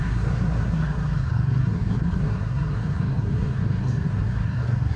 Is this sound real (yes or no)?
no